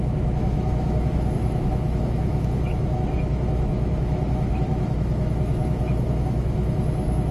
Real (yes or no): no